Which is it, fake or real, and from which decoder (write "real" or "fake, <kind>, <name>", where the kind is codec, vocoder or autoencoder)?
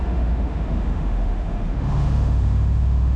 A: fake, autoencoder, DAC-VAE